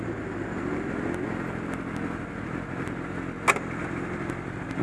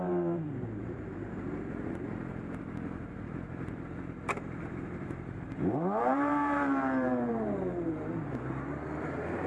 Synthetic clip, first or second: second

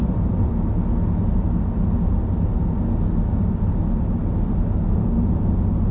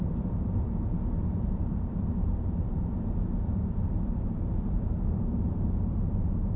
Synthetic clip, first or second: second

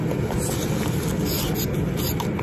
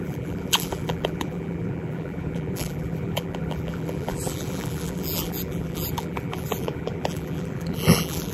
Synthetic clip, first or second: second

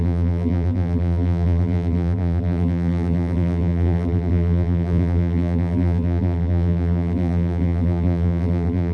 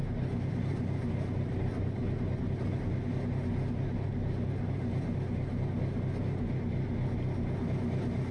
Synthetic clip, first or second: first